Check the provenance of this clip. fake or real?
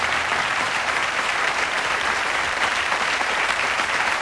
fake